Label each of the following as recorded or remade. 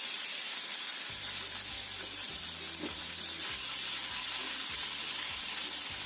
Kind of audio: remade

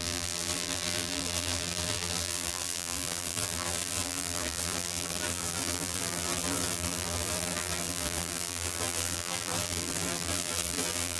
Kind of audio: remade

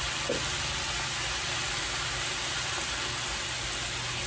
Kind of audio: recorded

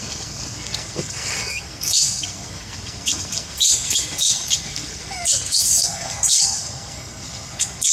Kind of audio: remade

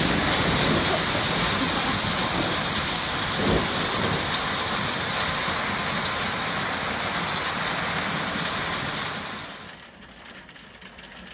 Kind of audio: recorded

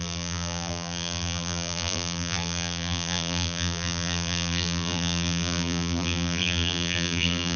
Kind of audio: remade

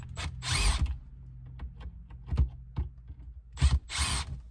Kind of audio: recorded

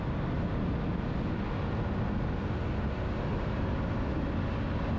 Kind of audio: recorded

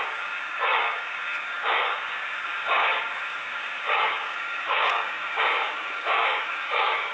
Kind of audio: remade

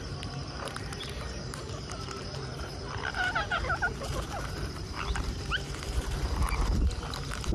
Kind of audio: remade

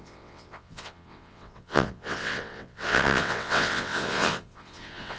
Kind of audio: remade